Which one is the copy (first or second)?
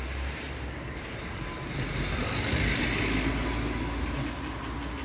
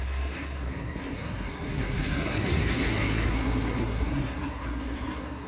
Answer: second